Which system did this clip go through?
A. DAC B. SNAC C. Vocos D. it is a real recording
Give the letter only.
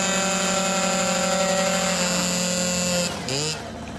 D